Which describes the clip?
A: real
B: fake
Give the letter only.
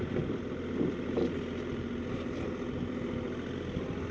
A